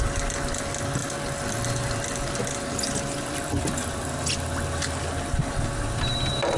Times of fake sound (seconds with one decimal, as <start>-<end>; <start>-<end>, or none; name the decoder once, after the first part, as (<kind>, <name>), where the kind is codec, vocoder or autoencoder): none